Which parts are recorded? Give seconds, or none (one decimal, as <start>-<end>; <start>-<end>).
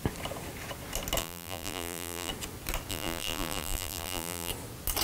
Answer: 0.0-1.2; 2.3-2.9; 4.5-5.0